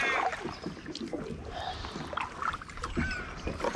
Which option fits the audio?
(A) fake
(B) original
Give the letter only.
B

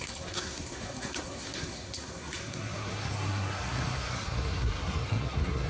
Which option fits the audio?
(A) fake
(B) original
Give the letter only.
A